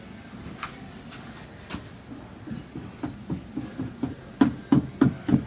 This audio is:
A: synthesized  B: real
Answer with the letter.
B